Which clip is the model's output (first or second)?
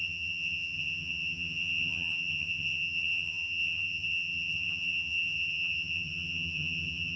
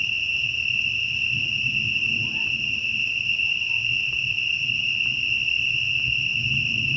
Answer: first